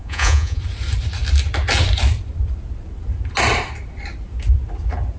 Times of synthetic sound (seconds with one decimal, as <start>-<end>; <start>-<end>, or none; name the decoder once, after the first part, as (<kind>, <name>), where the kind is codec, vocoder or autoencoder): 0.0-0.6 (vocoder, Vocos)